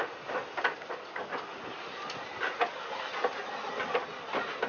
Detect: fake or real real